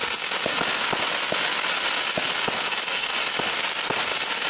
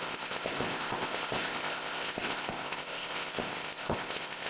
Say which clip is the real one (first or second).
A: first